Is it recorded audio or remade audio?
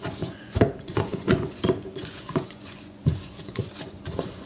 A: remade